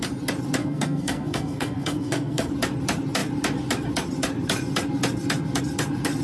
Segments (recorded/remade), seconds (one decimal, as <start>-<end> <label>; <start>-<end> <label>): 0.0-0.6 recorded; 0.6-2.5 remade; 2.5-6.2 recorded